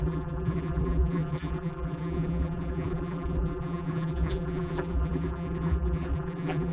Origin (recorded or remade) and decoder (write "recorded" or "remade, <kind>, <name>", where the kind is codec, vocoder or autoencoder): remade, vocoder, BigVGAN v2